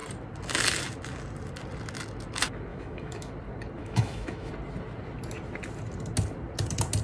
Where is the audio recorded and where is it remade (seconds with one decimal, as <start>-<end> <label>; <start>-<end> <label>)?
0.0-2.7 recorded; 2.7-3.3 remade; 3.3-3.8 recorded; 3.8-4.5 remade; 4.5-7.0 recorded